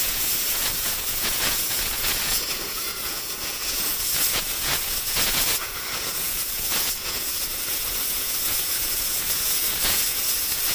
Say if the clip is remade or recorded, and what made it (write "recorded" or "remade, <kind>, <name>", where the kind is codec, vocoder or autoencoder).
remade, vocoder, Vocos